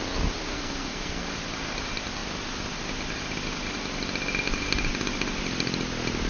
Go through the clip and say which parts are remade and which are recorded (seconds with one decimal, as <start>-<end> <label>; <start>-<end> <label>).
0.0-0.5 recorded; 0.5-1.3 remade; 1.3-6.3 recorded